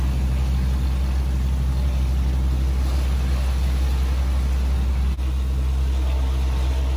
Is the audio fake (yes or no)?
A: no